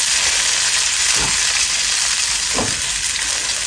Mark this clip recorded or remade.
recorded